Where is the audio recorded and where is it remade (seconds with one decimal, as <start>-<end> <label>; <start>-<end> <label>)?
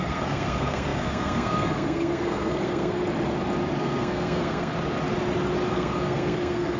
0.0-3.0 remade; 3.0-3.8 recorded; 3.8-4.7 remade; 4.7-5.7 recorded; 5.7-6.8 remade